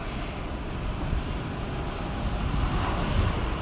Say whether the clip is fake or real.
real